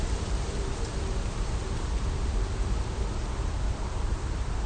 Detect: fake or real fake